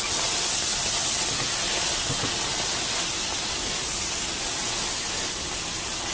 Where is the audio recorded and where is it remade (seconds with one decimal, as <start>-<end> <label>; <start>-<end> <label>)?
0.0-6.1 recorded